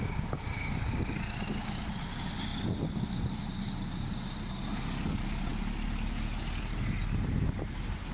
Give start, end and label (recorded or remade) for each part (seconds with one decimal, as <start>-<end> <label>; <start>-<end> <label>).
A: 0.0-8.1 recorded